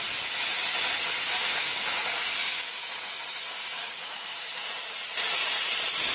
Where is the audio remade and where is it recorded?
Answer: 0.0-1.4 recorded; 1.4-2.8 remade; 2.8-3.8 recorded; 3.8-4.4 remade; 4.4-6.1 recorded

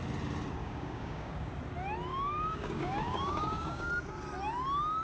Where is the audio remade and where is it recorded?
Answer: 0.0-0.6 recorded; 0.6-1.5 remade; 1.5-2.1 recorded; 2.1-3.9 remade; 3.9-5.0 recorded

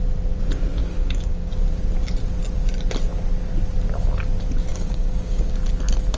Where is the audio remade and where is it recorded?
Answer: 0.0-0.8 recorded; 0.8-1.5 remade; 1.5-4.7 recorded; 4.7-5.5 remade; 5.5-6.2 recorded

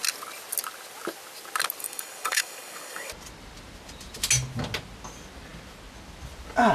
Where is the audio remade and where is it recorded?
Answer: 0.0-1.8 recorded; 1.8-3.1 remade; 3.1-6.7 recorded

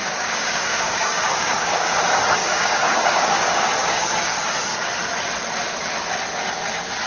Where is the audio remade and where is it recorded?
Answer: 0.0-2.0 remade; 2.0-2.4 recorded; 2.4-4.5 remade; 4.5-7.1 recorded